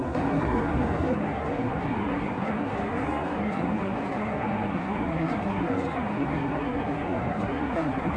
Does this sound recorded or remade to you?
remade